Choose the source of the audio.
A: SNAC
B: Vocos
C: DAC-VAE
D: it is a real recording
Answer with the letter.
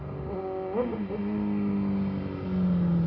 D